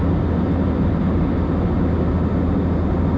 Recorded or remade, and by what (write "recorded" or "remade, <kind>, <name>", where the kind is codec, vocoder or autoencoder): recorded